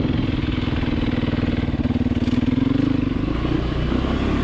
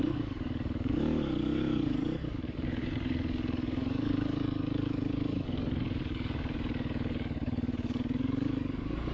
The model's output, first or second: second